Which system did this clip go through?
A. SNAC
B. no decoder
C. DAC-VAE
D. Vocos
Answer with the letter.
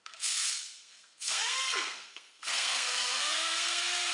A